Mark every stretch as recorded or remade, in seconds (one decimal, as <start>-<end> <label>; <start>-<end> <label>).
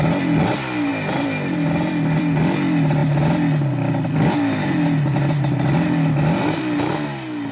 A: 0.0-7.5 recorded